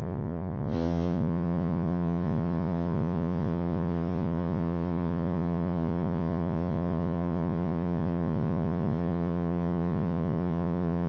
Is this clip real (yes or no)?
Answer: no